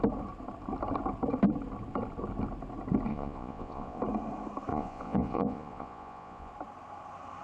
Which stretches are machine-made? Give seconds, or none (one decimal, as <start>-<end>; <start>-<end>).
3.1-4.0; 4.7-6.5